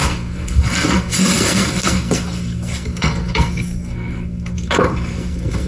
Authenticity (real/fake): fake